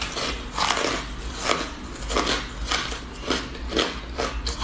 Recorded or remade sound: recorded